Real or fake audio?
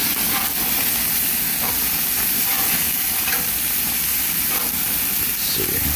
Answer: real